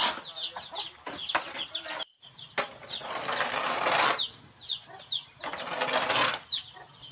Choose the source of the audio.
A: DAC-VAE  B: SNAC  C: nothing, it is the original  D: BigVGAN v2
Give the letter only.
C